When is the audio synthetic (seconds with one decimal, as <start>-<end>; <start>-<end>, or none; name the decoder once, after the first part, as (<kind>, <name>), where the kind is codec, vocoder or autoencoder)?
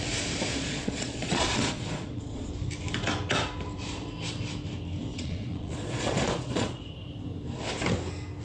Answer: 0.5-2.5 (vocoder, Vocos); 5.1-6.9